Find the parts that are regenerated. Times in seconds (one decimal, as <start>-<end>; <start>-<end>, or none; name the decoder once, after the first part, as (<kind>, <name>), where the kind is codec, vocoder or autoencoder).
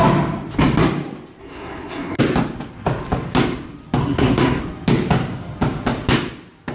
1.4-2.2 (codec, SNAC); 4.0-4.6